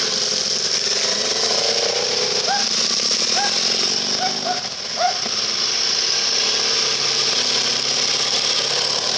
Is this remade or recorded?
recorded